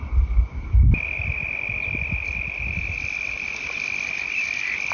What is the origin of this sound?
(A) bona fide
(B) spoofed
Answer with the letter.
A